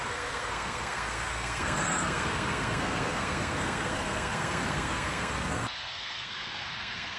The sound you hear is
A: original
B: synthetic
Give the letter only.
B